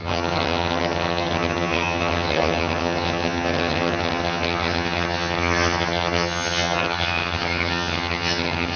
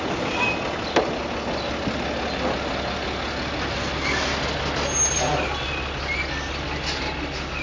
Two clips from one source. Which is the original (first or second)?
second